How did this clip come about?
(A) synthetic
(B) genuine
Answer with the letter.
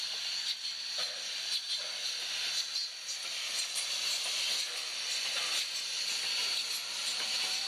B